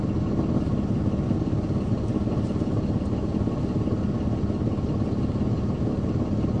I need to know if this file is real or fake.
real